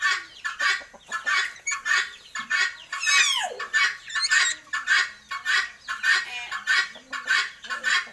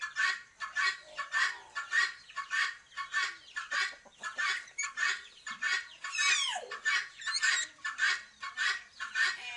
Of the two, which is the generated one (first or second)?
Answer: second